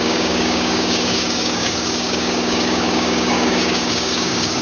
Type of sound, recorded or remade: remade